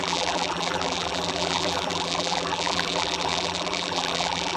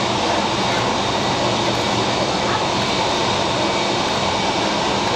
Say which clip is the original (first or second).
second